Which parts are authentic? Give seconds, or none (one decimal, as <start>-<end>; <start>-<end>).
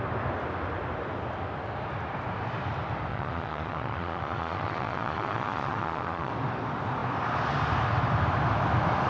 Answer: 0.0-3.1; 6.3-9.1